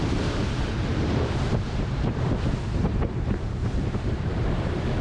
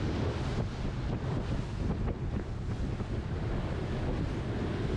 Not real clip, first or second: first